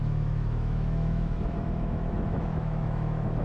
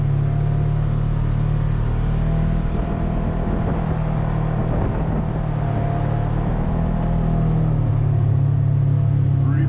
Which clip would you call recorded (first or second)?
second